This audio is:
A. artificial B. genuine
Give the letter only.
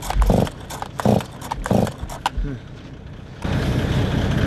B